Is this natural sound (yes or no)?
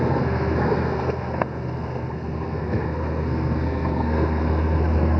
no